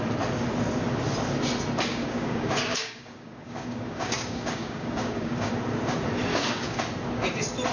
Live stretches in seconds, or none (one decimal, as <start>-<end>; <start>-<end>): 0.0-1.9; 5.5-6.3; 6.8-7.7